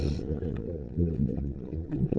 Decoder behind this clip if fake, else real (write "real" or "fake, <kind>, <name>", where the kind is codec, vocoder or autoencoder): fake, vocoder, Vocos